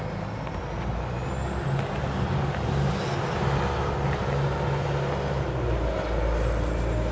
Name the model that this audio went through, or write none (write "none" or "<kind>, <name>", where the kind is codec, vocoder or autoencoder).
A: none